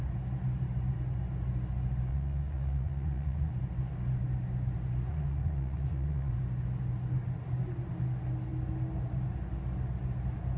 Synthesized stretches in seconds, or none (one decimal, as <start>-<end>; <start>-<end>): 2.1-3.6; 5.1-6.3